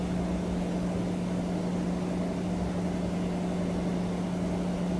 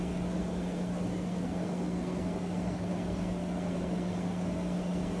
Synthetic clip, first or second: second